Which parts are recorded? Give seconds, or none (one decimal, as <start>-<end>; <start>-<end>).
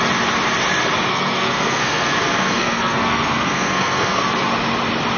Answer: 0.0-1.1; 4.2-5.2